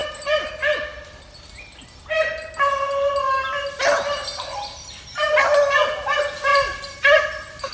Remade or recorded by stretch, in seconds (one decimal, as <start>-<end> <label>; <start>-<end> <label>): 0.0-7.7 recorded